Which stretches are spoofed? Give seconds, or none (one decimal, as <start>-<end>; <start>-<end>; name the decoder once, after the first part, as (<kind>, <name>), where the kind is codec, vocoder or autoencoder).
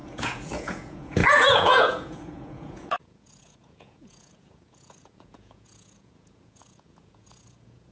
0.0-7.9 (vocoder, Vocos)